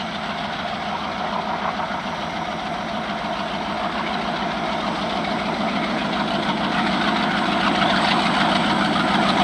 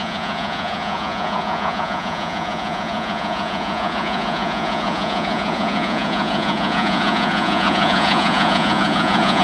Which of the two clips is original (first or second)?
first